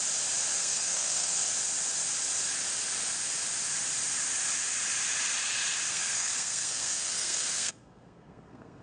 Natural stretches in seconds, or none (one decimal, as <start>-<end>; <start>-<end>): 0.0-0.5; 1.5-5.9